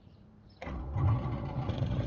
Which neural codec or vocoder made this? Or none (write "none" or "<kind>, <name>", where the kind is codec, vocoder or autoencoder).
vocoder, Vocos